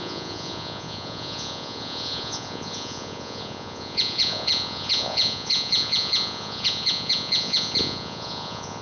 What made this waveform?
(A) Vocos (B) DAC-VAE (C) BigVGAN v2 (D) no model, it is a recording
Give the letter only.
A